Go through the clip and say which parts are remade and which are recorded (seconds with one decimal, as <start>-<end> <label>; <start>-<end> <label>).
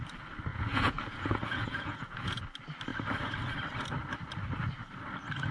0.0-0.5 recorded; 0.5-2.4 remade; 2.4-5.5 recorded